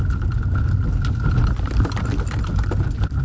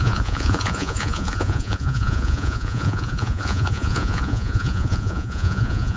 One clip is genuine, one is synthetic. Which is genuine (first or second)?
first